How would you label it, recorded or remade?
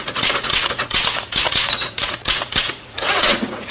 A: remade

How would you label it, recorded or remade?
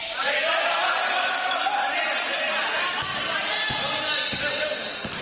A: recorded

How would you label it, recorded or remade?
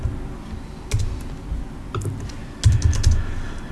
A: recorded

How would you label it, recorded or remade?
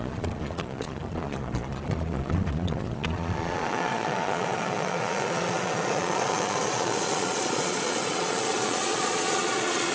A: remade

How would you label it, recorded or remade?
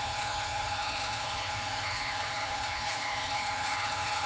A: remade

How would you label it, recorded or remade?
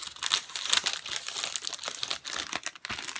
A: recorded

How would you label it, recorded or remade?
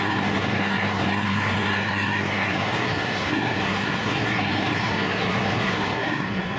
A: remade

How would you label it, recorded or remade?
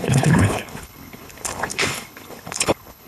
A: remade